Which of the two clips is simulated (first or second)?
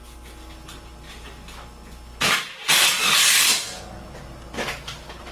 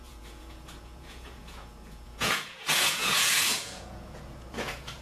second